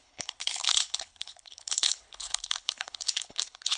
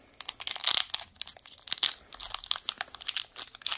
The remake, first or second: first